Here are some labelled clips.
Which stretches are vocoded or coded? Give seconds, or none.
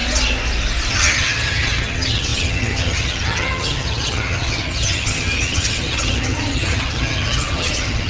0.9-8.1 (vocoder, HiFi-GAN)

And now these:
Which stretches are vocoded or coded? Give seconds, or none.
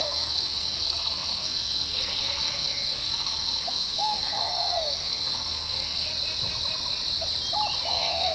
0.0-6.1 (codec, SNAC); 7.9-8.3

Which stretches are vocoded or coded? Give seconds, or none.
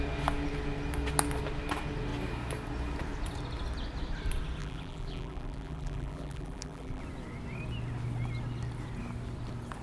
4.6-7.0 (vocoder, BigVGAN v2)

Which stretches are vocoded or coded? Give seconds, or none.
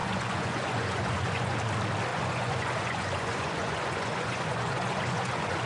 0.0-1.6 (vocoder, Vocos); 2.1-5.7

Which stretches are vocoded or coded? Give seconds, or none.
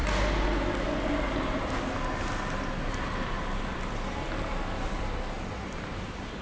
none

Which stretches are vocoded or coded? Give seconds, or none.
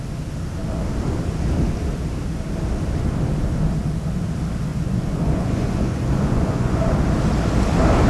4.7-6.9 (vocoder, Vocos)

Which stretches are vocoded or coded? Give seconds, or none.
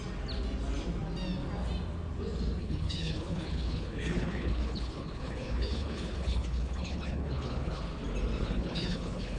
2.6-7.8 (codec, HILCodec); 8.4-9.4